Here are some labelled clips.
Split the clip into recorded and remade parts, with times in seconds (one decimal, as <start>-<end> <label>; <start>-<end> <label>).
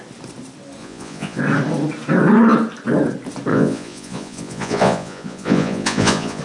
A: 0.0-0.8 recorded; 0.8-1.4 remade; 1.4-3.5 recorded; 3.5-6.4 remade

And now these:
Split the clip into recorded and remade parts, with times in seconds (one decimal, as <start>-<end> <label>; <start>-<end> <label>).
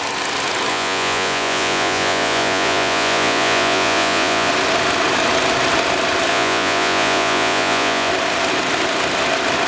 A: 0.0-0.7 recorded; 0.7-4.5 remade; 4.5-6.3 recorded; 6.3-8.1 remade; 8.1-9.7 recorded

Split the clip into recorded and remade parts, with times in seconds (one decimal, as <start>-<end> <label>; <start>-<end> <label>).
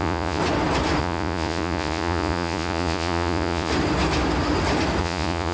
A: 0.0-0.4 remade; 0.4-1.0 recorded; 1.0-3.7 remade; 3.7-5.0 recorded; 5.0-5.5 remade